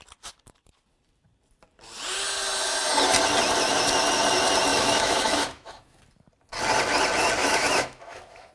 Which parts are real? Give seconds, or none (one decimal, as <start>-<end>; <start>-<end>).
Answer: 0.0-4.7; 6.0-7.4